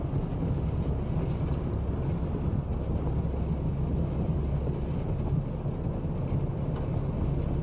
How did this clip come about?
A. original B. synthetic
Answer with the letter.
A